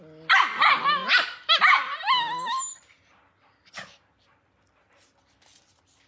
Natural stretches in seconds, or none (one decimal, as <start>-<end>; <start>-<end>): 0.0-6.1